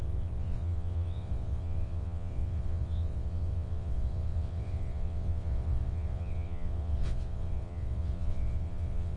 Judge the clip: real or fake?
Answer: fake